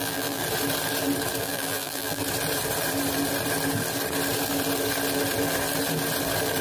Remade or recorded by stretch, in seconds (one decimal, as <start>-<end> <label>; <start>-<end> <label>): 0.0-0.4 remade; 0.4-1.4 recorded; 1.4-2.2 remade; 2.2-6.6 recorded